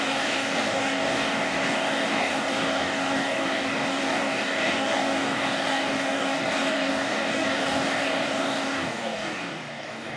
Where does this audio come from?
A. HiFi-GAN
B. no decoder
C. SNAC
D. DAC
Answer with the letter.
D